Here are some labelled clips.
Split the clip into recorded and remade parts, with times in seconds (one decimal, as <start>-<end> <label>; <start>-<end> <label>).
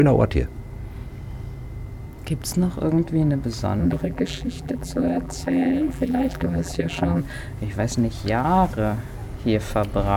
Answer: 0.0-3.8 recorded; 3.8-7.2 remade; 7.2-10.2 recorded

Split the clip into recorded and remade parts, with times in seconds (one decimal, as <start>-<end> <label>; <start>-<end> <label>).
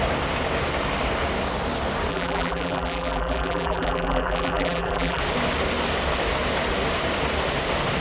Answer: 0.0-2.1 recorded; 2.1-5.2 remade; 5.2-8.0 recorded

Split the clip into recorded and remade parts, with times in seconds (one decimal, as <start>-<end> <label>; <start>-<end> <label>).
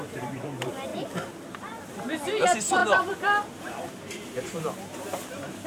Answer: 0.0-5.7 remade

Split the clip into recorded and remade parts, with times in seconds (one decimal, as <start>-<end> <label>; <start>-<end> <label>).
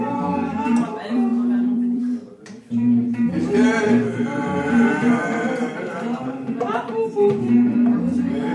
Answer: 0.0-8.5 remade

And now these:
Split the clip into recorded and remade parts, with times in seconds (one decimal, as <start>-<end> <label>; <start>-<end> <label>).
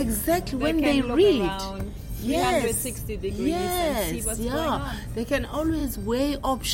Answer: 0.0-2.2 recorded; 2.2-2.8 remade; 2.8-6.7 recorded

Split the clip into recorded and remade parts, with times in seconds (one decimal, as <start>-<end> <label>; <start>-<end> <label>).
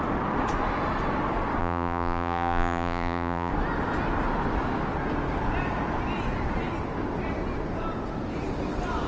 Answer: 0.0-1.6 recorded; 1.6-3.5 remade; 3.5-9.1 recorded